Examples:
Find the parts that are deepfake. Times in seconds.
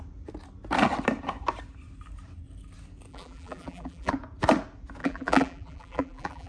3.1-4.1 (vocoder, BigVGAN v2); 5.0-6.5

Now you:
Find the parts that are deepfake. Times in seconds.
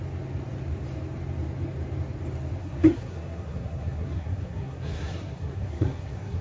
2.6-6.4 (codec, SNAC)